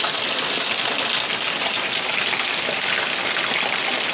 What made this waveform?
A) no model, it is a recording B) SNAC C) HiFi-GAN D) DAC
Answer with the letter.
A